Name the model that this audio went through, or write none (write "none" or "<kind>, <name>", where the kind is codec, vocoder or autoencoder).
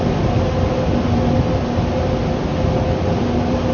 none